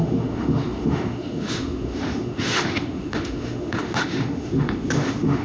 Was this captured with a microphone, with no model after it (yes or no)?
no